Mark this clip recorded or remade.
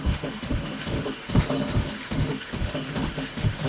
remade